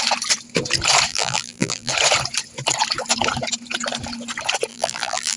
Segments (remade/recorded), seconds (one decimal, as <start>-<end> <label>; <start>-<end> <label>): 0.0-1.1 recorded; 1.1-1.9 remade; 1.9-4.7 recorded; 4.7-5.4 remade